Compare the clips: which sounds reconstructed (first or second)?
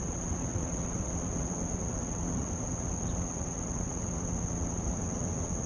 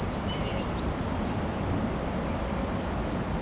first